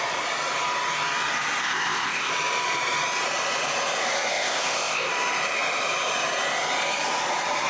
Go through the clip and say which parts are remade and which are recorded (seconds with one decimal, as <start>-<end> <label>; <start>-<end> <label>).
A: 0.0-1.6 recorded; 1.6-2.3 remade; 2.3-4.3 recorded; 4.3-5.1 remade; 5.1-7.7 recorded